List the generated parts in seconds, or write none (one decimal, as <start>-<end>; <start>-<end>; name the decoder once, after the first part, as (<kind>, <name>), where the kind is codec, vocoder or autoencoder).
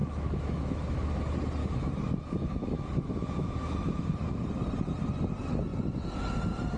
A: 0.0-1.2 (autoencoder, DAC-VAE); 1.6-4.4